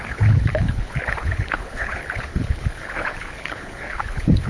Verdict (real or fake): fake